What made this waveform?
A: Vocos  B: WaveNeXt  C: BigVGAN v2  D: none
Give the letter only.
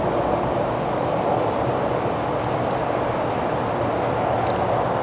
D